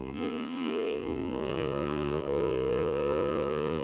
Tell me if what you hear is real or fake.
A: fake